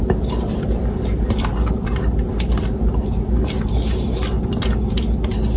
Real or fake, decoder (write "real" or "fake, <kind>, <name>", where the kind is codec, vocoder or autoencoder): real